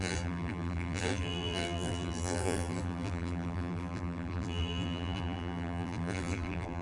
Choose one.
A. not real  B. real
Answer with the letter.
A